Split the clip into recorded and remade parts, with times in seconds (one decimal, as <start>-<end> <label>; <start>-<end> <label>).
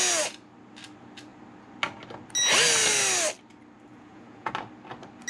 0.0-3.9 recorded; 3.9-4.5 remade; 4.5-5.3 recorded